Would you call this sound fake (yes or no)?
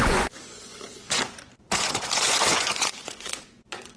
yes